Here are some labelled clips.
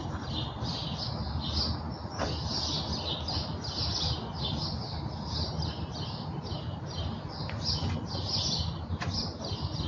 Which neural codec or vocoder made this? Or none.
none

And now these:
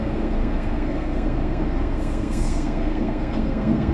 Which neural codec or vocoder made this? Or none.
codec, SNAC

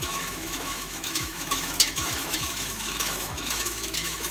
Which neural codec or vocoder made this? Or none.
autoencoder, DAC-VAE